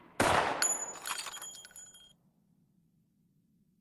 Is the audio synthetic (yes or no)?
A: no